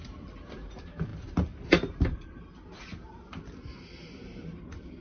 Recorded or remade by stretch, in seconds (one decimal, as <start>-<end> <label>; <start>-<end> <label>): 0.0-5.0 recorded